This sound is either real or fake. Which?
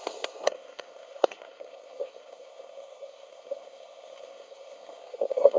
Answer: fake